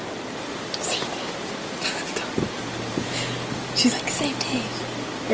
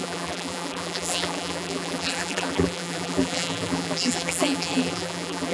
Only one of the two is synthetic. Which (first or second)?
second